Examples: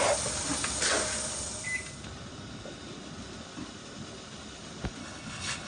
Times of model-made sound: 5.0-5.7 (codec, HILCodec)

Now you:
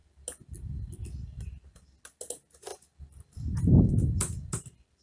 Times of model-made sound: none

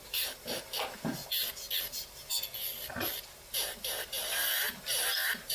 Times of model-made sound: 0.0-1.2 (vocoder, BigVGAN v2); 1.8-2.3; 3.5-5.5

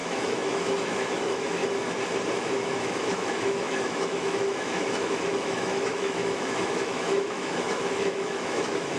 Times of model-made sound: 0.0-1.6 (autoencoder, DAC-VAE); 2.4-9.0

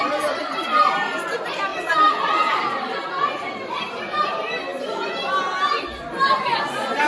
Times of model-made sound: 1.7-3.1 (vocoder, BigVGAN v2)